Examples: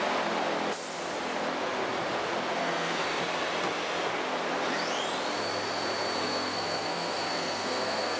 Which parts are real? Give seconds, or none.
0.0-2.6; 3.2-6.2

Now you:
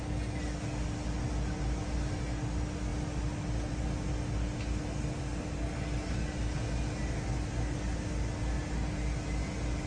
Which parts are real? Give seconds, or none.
0.0-9.9

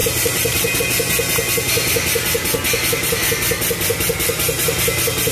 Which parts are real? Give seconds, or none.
0.8-5.3

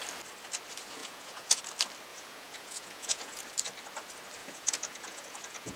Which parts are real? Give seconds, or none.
0.0-1.0; 1.6-2.1; 3.4-4.4

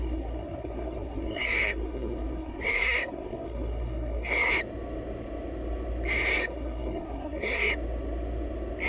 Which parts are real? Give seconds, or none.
4.5-6.4; 7.7-8.9

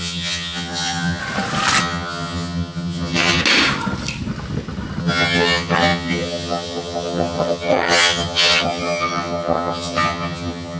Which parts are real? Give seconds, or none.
1.2-1.8; 3.4-5.0

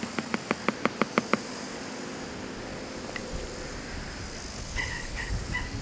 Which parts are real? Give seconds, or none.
0.0-4.5; 5.3-5.8